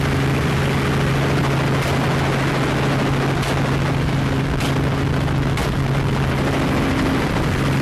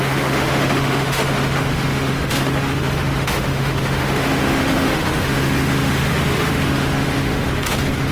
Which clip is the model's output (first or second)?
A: second